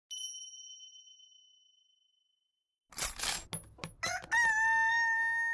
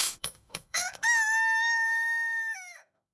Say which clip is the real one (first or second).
first